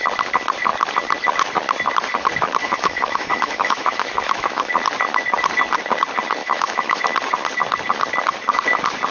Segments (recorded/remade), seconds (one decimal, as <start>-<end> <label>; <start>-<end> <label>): 0.0-2.6 recorded; 2.6-4.7 remade; 4.7-6.4 recorded; 6.4-7.0 remade; 7.0-9.1 recorded